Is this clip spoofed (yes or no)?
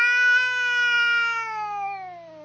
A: no